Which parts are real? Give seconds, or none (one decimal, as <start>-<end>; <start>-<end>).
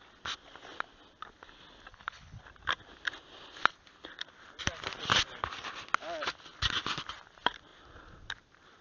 0.0-1.9; 2.4-8.8